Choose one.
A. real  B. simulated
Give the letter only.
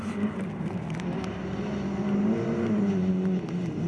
A